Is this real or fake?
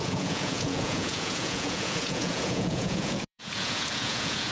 fake